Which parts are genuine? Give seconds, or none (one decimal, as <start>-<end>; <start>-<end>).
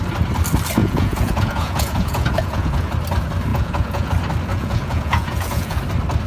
0.0-0.8; 2.9-3.5; 4.1-4.5; 5.8-6.3